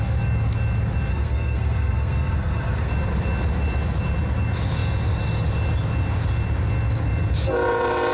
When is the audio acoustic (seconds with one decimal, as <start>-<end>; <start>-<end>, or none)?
0.0-1.1; 2.9-8.1